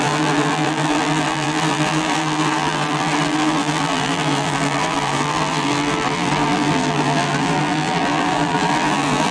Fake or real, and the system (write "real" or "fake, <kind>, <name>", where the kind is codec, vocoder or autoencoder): fake, vocoder, BigVGAN v2